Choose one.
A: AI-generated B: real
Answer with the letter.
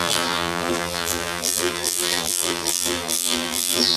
A